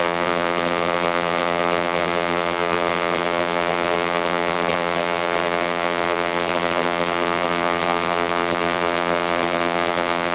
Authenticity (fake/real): fake